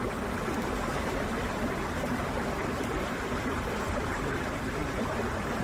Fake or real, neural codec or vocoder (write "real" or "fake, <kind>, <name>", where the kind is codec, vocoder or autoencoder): fake, vocoder, BigVGAN v2